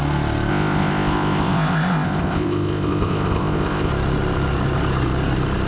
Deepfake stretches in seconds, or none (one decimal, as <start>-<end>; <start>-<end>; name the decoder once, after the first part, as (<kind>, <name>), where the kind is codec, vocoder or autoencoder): 0.5-3.9 (codec, ZipCodec)